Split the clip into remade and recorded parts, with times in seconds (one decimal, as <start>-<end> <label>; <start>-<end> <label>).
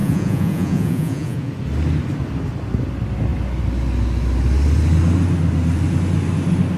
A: 0.0-1.5 remade; 1.5-6.8 recorded